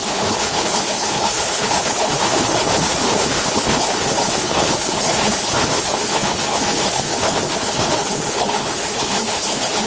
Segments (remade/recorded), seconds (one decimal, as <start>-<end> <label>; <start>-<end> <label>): 0.0-9.9 remade